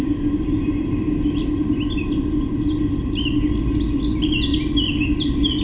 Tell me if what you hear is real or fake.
real